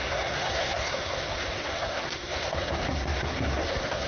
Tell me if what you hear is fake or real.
fake